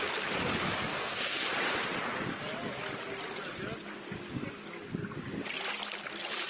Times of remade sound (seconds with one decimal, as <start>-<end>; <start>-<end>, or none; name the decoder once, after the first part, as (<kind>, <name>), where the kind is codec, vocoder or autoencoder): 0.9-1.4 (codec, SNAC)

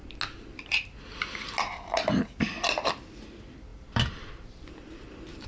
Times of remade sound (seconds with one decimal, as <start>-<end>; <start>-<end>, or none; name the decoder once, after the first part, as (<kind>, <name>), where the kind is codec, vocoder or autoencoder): 3.3-5.5 (vocoder, BigVGAN v2)

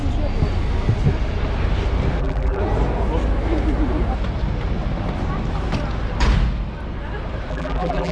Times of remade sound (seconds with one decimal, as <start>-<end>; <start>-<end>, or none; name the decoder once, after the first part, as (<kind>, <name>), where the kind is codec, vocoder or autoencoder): 2.2-2.6 (vocoder, BigVGAN v2); 7.5-8.1